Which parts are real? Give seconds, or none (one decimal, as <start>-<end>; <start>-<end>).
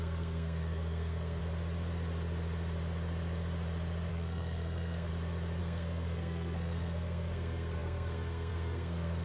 1.4-4.1; 5.1-5.6